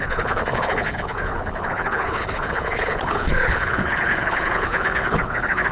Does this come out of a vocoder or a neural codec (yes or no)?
yes